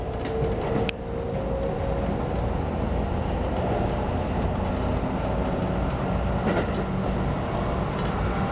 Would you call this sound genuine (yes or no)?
yes